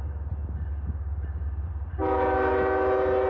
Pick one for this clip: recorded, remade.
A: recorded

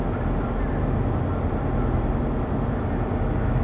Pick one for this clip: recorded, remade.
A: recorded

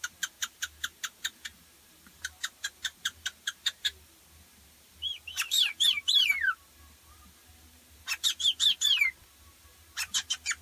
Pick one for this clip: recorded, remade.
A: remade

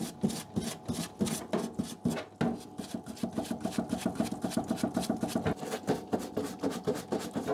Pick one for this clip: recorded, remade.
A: recorded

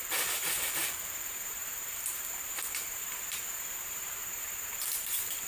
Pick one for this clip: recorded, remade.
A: remade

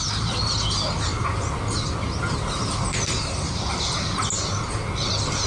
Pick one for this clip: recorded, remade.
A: recorded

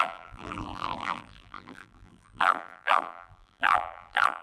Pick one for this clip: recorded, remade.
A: remade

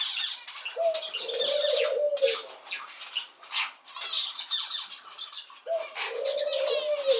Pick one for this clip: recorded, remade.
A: recorded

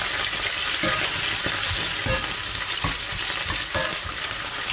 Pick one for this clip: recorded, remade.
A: recorded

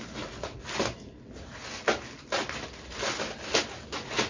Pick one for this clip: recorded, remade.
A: recorded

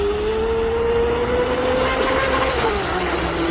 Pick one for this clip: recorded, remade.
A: recorded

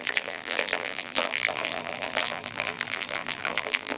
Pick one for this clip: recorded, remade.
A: remade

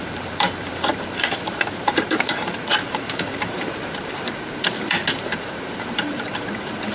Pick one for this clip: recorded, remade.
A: remade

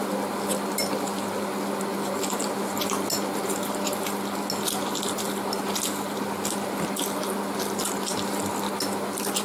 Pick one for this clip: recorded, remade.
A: recorded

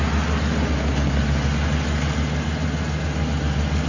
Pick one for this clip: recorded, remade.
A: recorded